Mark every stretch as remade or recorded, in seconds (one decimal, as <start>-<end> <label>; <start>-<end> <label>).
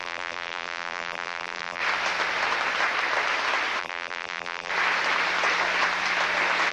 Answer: 0.0-1.8 remade; 1.8-3.8 recorded; 3.8-4.7 remade; 4.7-6.7 recorded